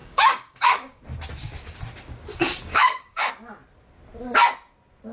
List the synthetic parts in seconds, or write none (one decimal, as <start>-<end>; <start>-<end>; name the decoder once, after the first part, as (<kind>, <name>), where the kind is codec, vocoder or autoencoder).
0.0-1.0 (codec, DAC); 2.3-3.3